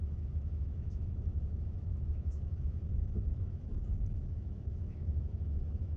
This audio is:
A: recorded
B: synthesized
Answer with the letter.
B